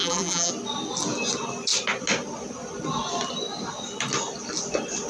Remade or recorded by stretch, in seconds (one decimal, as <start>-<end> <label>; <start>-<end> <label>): 0.0-0.5 remade; 0.5-5.1 recorded